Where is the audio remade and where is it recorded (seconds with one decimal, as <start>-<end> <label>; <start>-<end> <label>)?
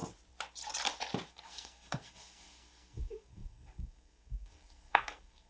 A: 0.0-1.3 recorded; 1.3-5.5 remade